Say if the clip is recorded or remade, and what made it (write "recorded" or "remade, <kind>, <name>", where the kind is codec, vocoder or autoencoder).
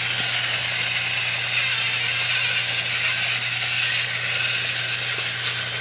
recorded